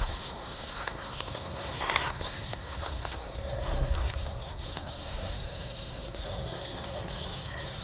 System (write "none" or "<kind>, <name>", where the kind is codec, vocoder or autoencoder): codec, SNAC